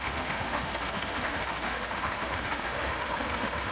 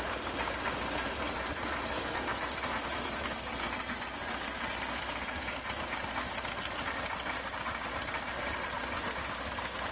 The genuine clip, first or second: second